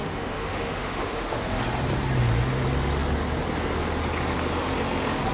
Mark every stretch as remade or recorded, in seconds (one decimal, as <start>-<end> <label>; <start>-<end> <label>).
0.0-1.6 remade; 1.6-5.3 recorded